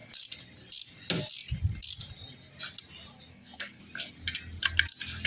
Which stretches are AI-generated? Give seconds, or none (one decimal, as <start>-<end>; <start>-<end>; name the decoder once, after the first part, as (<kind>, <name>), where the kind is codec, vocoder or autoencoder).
3.3-3.8 (codec, SNAC)